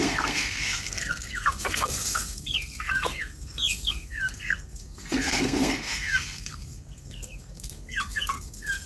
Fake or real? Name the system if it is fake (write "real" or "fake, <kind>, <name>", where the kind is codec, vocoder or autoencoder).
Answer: fake, codec, SNAC